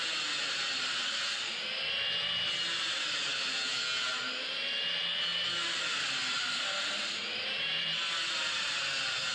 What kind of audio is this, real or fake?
real